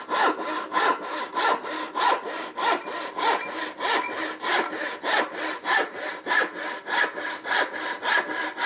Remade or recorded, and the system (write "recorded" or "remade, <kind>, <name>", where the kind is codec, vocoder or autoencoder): recorded